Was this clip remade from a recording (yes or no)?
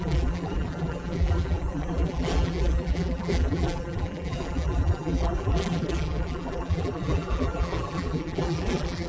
yes